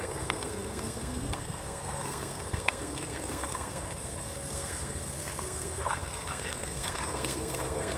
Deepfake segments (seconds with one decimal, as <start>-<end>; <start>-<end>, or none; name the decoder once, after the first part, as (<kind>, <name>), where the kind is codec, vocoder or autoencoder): 0.0-8.0 (codec, SNAC)